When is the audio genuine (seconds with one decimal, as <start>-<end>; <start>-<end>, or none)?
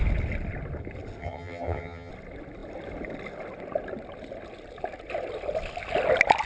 0.0-1.2; 2.1-6.5